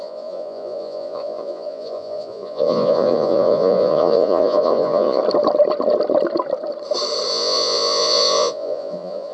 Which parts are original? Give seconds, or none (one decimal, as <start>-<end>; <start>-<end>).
5.2-7.3